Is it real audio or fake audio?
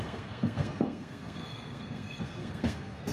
fake